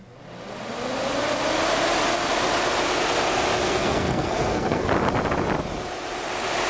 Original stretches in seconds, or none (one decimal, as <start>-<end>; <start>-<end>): 0.0-3.6; 4.9-6.7